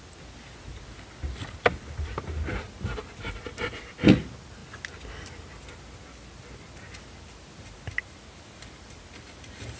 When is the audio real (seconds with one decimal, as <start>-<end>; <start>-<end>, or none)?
0.0-9.8